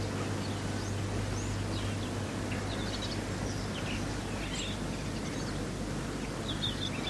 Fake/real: real